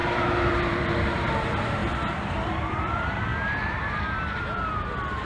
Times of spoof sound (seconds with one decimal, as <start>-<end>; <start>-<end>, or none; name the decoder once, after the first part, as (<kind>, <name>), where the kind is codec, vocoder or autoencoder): 0.5-1.8 (vocoder, BigVGAN v2); 2.7-3.3